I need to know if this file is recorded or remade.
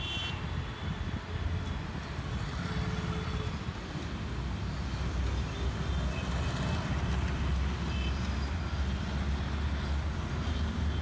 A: recorded